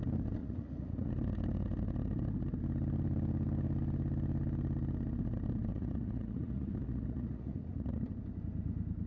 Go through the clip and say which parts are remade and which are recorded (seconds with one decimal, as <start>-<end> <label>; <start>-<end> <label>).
0.0-0.4 recorded; 0.4-1.1 remade; 1.1-5.7 recorded; 5.7-8.0 remade; 8.0-9.1 recorded